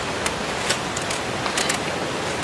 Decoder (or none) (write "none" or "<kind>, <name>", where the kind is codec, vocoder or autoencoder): none